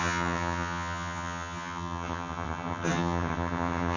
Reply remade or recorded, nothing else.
remade